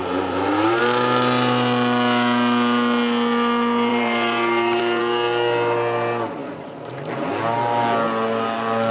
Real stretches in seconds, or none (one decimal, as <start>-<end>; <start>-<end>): 0.8-3.9; 5.0-8.9